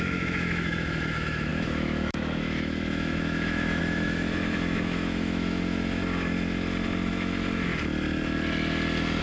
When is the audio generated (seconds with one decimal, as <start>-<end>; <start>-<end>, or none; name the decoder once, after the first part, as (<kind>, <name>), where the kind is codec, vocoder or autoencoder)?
0.0-6.0 (autoencoder, DAC-VAE); 7.1-7.7